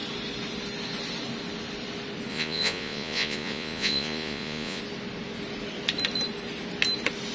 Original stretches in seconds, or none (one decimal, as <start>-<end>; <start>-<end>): 0.0-2.3; 4.8-7.3